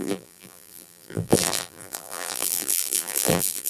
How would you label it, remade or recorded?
remade